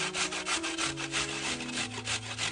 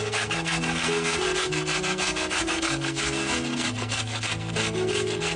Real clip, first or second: first